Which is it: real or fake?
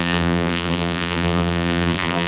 fake